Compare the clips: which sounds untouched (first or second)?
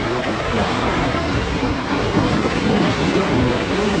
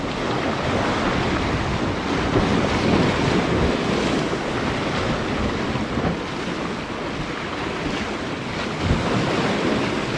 second